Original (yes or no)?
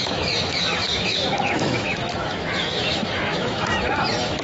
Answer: no